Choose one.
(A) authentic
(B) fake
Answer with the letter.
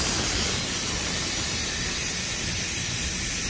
B